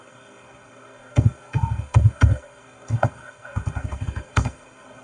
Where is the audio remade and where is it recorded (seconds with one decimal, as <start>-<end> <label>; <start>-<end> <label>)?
0.0-5.0 remade